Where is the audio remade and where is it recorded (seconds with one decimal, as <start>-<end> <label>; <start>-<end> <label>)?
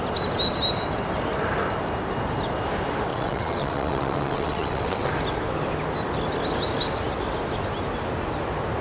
0.0-3.1 recorded; 3.1-5.1 remade; 5.1-8.8 recorded